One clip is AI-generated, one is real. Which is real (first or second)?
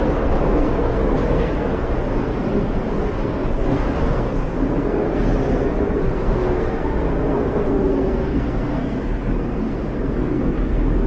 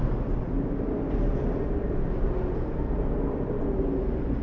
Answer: second